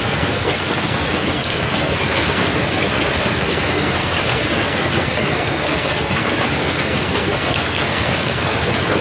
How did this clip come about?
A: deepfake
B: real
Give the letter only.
A